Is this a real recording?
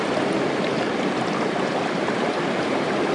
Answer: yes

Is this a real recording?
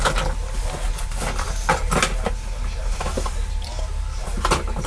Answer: yes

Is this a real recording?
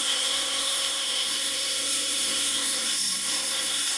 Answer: no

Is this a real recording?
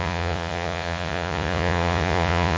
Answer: no